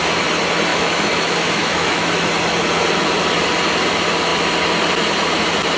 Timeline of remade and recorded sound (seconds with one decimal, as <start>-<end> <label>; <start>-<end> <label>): 0.0-0.7 recorded; 0.7-2.3 remade; 2.3-5.8 recorded